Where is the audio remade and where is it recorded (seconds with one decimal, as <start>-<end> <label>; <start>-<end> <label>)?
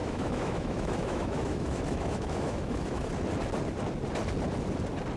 0.0-3.1 remade; 3.1-5.2 recorded